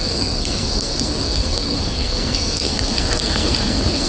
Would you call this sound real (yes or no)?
no